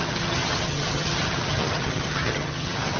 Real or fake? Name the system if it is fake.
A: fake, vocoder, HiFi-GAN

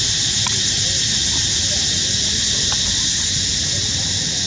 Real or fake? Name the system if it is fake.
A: real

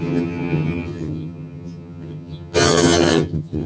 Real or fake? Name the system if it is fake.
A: fake, vocoder, HiFi-GAN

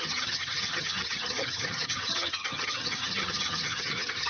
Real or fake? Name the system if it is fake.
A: fake, vocoder, HiFi-GAN